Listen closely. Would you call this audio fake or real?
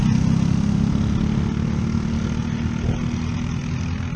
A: real